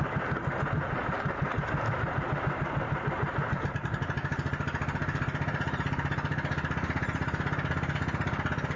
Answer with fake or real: real